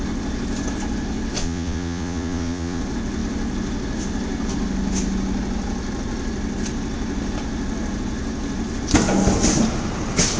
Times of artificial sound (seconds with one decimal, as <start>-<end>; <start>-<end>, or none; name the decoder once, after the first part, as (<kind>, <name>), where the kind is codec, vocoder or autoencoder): 1.4-2.8 (vocoder, Vocos)